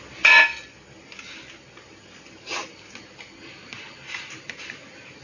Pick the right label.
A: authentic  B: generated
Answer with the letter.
A